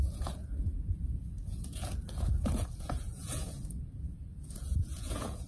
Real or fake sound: fake